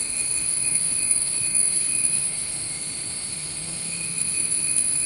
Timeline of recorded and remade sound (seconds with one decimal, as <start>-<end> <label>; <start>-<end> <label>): 0.0-5.1 remade